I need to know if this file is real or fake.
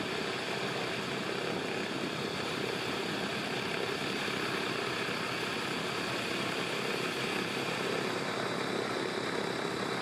real